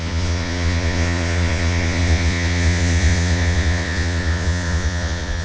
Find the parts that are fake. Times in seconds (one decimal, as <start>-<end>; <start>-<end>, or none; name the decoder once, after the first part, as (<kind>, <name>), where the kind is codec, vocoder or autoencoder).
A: 0.0-5.4 (vocoder, Vocos)